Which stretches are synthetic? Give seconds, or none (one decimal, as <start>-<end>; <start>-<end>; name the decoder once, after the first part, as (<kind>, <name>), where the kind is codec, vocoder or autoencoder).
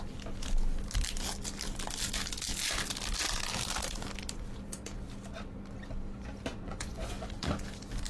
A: 6.5-7.5 (vocoder, Vocos)